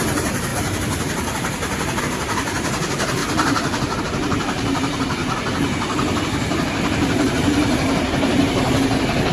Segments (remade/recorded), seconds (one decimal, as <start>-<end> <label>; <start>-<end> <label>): 0.0-3.2 remade; 3.2-4.0 recorded; 4.0-5.2 remade; 5.2-6.6 recorded; 6.6-9.3 remade